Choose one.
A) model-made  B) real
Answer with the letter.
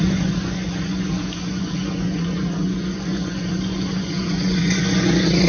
A